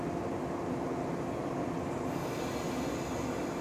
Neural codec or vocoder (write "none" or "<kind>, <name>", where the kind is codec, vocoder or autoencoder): none